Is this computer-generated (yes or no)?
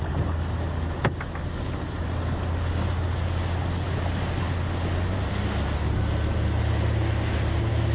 no